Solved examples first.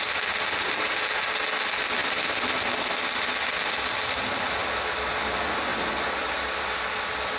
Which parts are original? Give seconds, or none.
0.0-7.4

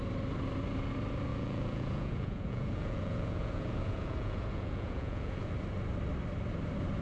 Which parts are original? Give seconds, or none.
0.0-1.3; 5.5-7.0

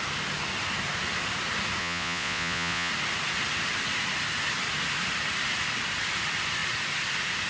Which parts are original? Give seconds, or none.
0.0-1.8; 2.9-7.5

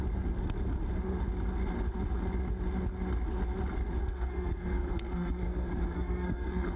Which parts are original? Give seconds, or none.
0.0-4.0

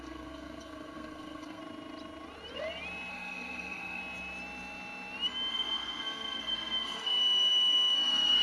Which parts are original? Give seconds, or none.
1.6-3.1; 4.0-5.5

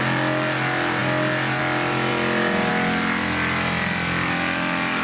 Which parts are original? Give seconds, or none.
0.0-5.0